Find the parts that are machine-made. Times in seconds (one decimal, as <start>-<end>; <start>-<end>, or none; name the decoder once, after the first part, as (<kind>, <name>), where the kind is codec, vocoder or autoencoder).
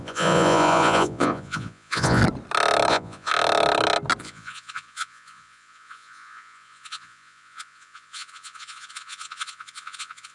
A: 0.0-2.2 (vocoder, Vocos); 2.9-3.3; 4.2-10.3